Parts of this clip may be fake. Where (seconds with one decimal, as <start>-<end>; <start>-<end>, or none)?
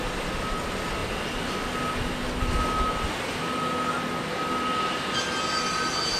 none